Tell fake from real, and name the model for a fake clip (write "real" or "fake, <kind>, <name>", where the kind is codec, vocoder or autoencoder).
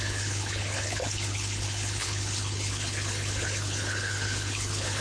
fake, codec, HILCodec